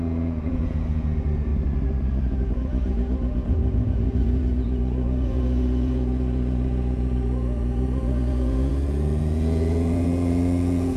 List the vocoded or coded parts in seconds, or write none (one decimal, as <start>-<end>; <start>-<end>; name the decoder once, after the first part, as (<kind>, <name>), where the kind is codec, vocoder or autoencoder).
0.0-1.5 (vocoder, Vocos); 2.3-11.0